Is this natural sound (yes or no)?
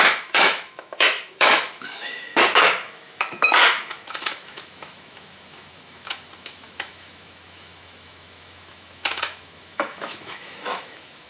no